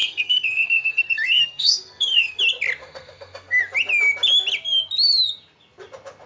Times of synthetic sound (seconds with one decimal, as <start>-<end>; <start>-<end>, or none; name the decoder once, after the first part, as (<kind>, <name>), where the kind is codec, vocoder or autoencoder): 0.0-2.4 (codec, SNAC); 2.8-3.6

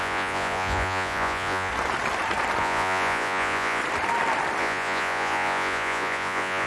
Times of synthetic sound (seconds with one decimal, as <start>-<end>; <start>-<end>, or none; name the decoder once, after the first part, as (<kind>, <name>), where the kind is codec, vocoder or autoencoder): 0.0-1.7 (vocoder, Vocos); 2.6-3.8; 4.6-6.7

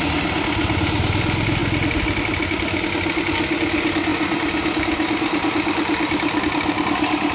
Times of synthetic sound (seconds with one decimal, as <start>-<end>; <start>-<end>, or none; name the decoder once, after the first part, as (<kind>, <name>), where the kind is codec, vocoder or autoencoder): none

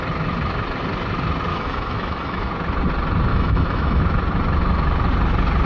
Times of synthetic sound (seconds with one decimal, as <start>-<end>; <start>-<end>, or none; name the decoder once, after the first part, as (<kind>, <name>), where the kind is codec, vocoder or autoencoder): 1.5-2.5 (autoencoder, DAC-VAE); 3.3-4.0

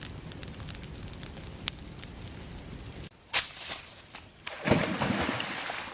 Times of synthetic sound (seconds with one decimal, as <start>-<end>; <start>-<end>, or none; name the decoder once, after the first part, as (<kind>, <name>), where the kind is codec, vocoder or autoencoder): 0.4-3.9 (vocoder, BigVGAN v2)

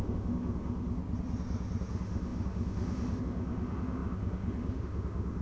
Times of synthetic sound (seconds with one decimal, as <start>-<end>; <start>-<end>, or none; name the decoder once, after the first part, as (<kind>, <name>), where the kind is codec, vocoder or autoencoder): 0.0-1.0 (autoencoder, DAC-VAE); 1.9-5.4